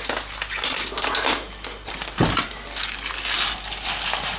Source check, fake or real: real